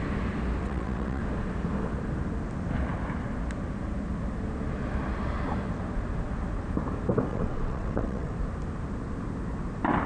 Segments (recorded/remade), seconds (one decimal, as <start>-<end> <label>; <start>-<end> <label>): 0.0-0.6 recorded; 0.6-1.2 remade; 1.2-7.3 recorded; 7.3-8.3 remade; 8.3-10.1 recorded